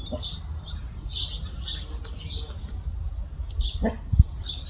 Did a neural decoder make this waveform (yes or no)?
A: no